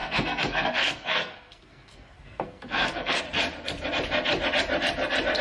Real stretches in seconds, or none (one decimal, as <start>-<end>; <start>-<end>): 3.2-5.4